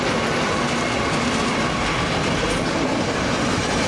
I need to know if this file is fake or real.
real